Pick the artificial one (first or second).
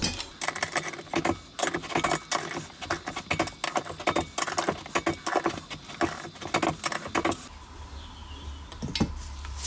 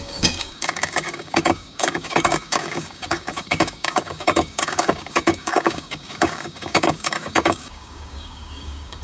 second